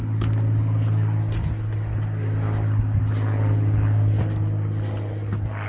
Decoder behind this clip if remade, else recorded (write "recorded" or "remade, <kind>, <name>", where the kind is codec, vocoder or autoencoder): recorded